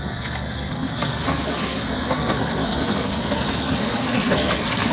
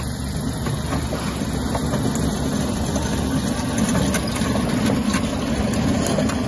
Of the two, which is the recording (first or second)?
second